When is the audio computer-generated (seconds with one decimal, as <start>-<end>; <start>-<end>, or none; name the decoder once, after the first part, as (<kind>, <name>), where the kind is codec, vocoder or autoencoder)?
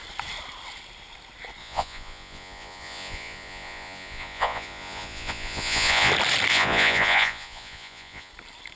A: 1.6-6.1 (vocoder, Vocos); 6.5-8.3